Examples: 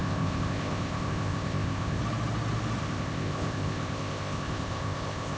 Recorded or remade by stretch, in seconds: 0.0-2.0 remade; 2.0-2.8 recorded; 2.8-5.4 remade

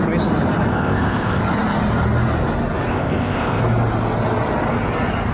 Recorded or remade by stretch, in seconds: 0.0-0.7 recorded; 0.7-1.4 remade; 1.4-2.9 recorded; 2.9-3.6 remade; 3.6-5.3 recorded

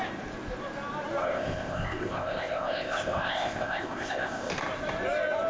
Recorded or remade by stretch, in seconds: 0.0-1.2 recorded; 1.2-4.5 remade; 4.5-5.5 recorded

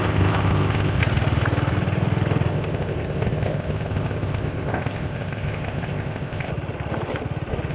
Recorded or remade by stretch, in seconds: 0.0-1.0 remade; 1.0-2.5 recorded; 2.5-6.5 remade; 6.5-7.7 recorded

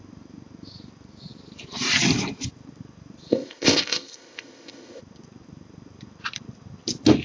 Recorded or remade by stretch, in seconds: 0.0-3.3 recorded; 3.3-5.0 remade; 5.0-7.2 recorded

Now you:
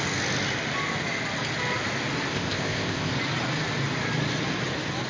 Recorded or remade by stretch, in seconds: 0.0-2.3 recorded; 2.3-3.1 remade; 3.1-5.1 recorded

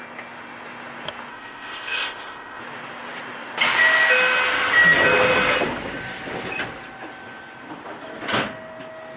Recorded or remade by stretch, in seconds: 0.0-1.3 recorded; 1.3-2.6 remade; 2.6-9.2 recorded

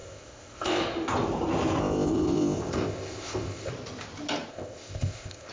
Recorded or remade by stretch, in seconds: 0.0-0.8 remade; 0.8-1.8 recorded; 1.8-3.7 remade; 3.7-4.5 recorded; 4.5-5.5 remade